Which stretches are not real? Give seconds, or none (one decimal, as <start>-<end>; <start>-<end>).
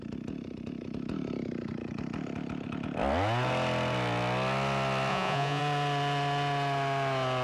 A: 5.1-5.6